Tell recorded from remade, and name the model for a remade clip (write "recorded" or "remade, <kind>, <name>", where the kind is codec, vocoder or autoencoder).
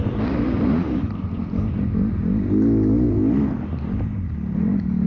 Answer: recorded